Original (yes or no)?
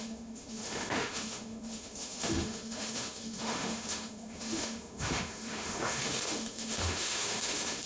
no